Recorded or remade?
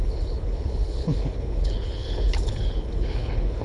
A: remade